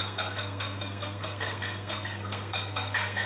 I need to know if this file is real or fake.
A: fake